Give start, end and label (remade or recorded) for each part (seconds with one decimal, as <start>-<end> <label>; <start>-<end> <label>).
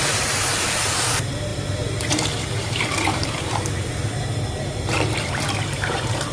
0.0-6.3 remade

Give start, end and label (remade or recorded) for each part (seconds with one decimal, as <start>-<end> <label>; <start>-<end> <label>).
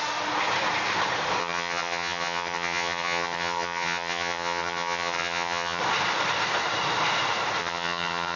0.0-1.4 recorded; 1.4-5.8 remade; 5.8-7.6 recorded; 7.6-8.4 remade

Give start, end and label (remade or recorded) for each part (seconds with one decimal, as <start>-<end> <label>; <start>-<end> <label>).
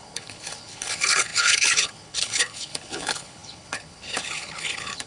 0.0-5.1 remade